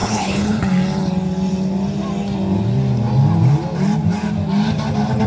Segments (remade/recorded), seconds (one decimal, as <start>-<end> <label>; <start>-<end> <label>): 0.0-0.6 remade; 0.6-5.3 recorded